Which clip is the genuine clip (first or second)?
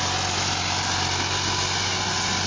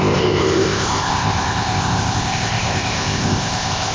first